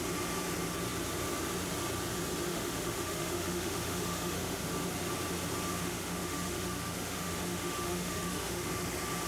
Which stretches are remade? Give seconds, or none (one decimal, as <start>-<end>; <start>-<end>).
2.5-4.7; 5.7-8.7